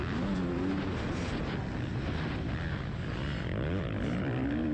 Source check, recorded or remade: recorded